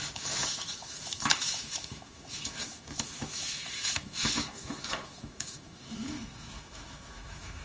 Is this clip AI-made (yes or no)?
yes